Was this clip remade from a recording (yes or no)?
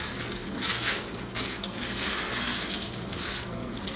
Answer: yes